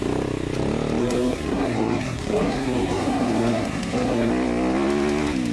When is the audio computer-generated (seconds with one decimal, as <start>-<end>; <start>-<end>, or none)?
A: 1.0-4.3